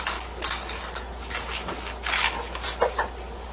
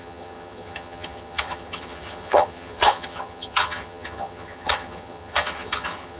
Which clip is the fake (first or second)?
second